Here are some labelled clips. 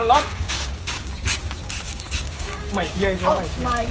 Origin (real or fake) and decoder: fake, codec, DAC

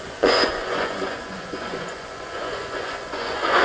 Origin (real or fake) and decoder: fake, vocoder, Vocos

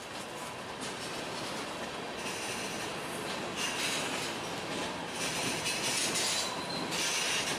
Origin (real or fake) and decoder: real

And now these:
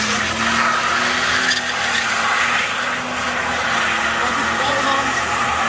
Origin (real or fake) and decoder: real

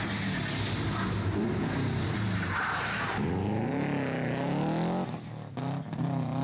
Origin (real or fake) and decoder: real